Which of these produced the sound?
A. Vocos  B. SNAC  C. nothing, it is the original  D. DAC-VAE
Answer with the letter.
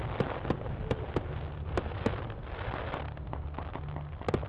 C